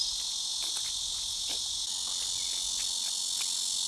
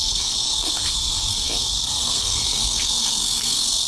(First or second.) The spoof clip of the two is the second